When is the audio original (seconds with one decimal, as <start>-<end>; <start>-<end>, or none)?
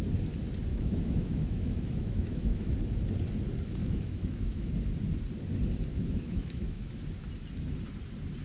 0.0-0.7; 2.7-3.8; 4.7-5.9; 6.9-8.4